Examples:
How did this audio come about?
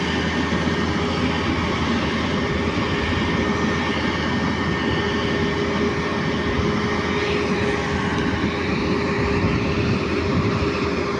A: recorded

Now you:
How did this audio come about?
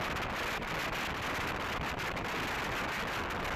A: recorded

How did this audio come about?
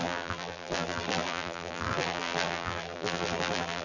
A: remade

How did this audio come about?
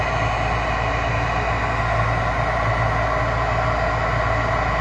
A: recorded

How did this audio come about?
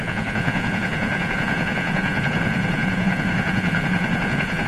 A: remade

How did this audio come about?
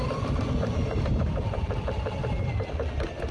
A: remade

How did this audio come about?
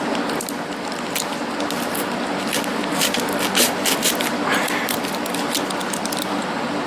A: recorded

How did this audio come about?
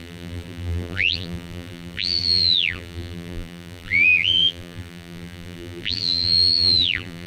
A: remade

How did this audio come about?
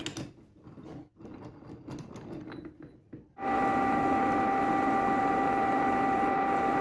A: recorded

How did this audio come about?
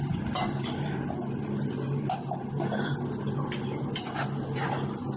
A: recorded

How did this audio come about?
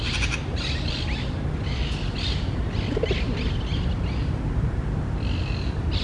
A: recorded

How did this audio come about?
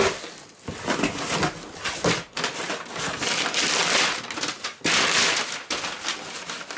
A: recorded